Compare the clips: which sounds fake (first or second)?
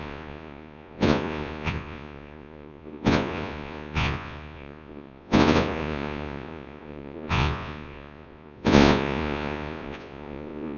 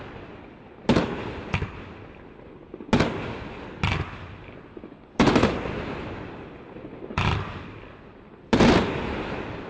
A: first